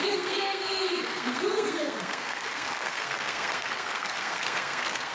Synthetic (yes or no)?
yes